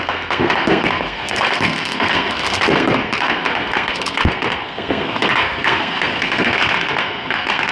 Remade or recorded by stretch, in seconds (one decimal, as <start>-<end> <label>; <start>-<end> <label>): 0.0-7.7 remade